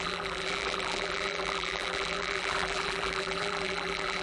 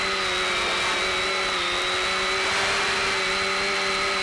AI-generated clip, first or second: first